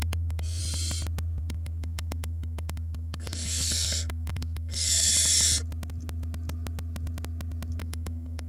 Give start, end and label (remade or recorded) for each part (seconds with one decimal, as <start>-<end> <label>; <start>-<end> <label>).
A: 0.0-0.6 remade; 0.6-1.4 recorded; 1.4-5.1 remade; 5.1-7.8 recorded; 7.8-8.5 remade